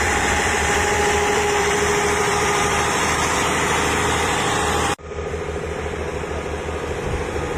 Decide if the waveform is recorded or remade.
remade